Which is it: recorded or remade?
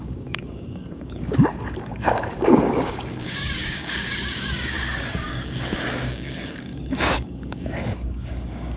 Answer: remade